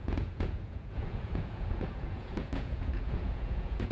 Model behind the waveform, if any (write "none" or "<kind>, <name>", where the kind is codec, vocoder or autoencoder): vocoder, Vocos